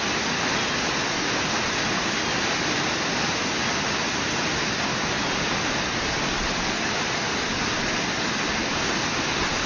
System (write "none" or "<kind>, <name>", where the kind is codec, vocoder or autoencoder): none